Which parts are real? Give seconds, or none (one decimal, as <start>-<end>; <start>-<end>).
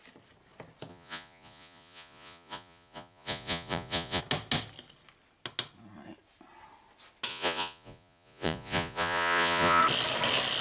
0.0-0.9; 4.2-7.3; 9.8-10.6